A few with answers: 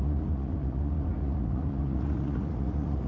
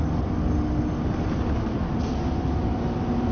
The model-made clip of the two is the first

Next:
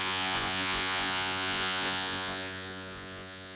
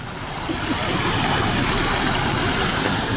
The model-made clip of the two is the first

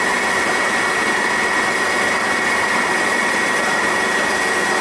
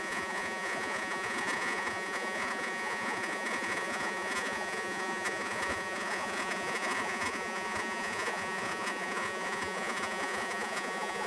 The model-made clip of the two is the second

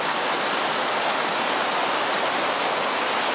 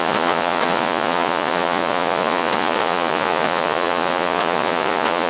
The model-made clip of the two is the second